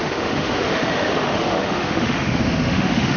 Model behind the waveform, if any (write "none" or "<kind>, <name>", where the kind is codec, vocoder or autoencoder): autoencoder, DAC-VAE